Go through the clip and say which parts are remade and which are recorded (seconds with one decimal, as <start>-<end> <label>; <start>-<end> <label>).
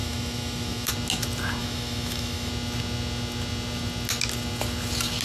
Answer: 0.0-0.9 remade; 0.9-1.6 recorded; 1.6-2.5 remade; 2.5-5.2 recorded